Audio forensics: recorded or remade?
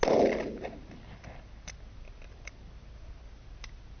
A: recorded